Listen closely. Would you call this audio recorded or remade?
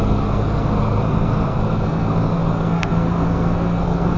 remade